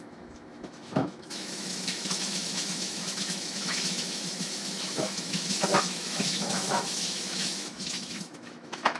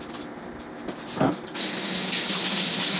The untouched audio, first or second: second